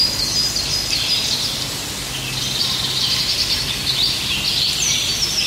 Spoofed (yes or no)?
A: no